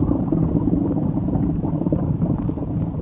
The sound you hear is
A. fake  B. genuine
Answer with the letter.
A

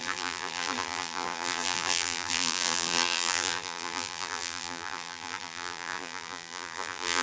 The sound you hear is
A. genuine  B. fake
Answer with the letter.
B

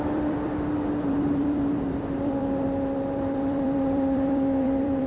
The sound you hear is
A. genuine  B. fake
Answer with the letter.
B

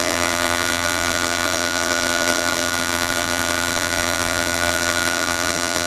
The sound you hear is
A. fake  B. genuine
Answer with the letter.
A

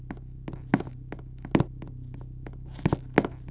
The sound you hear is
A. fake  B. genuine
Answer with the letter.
B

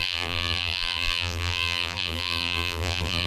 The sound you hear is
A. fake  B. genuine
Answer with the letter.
A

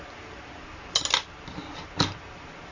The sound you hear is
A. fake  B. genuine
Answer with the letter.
B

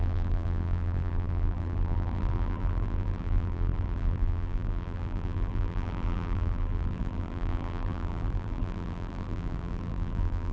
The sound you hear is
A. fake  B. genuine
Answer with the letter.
A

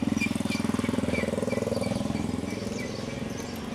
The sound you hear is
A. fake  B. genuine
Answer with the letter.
B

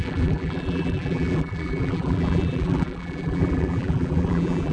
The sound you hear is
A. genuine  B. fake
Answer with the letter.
B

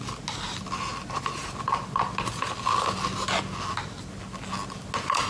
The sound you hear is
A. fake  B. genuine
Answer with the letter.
B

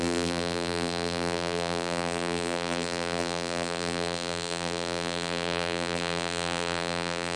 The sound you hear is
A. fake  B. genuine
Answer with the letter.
A